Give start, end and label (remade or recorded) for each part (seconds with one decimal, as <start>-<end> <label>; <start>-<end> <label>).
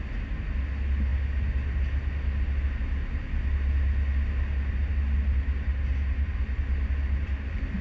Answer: 0.0-7.8 recorded